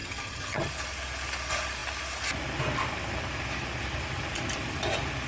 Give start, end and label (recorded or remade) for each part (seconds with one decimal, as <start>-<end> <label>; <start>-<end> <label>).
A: 0.0-0.7 remade; 0.7-5.3 recorded